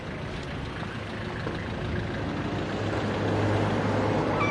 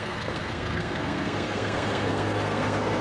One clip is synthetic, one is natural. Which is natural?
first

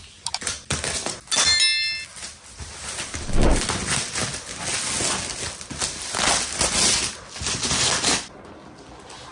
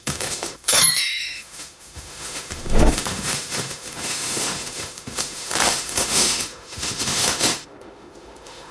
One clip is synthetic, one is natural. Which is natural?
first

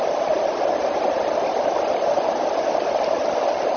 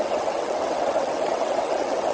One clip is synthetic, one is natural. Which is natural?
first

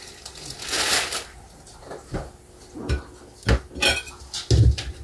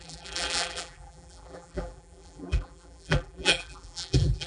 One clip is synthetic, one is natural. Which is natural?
first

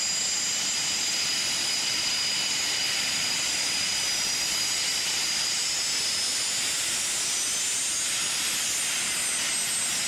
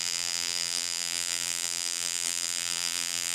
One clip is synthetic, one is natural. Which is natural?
first